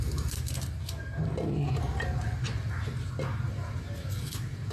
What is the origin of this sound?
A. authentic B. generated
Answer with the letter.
A